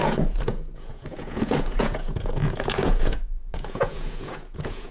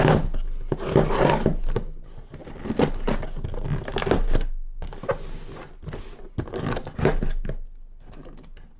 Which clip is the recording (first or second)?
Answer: second